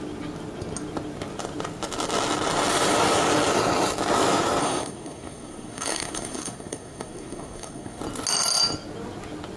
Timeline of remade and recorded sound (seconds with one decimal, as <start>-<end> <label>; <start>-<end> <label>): 0.0-4.6 recorded; 4.6-8.0 remade; 8.0-9.6 recorded